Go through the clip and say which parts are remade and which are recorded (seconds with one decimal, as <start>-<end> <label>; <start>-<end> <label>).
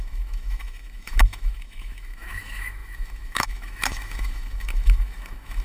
0.0-5.6 remade